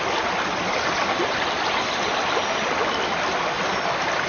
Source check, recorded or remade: recorded